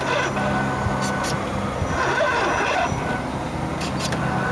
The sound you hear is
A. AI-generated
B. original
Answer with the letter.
B